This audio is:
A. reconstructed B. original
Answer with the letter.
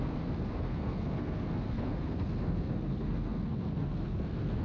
A